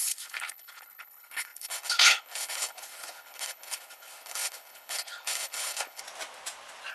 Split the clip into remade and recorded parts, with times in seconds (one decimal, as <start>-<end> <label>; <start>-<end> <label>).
0.0-6.0 remade; 6.0-6.9 recorded